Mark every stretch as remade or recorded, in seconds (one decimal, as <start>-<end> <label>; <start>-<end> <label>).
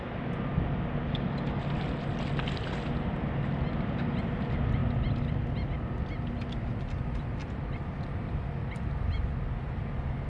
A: 0.0-10.3 recorded